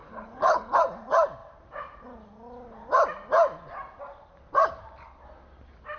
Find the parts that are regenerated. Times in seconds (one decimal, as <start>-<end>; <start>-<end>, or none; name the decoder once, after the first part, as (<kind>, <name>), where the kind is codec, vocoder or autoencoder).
0.0-0.8 (codec, HILCodec)